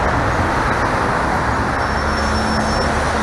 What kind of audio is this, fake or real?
real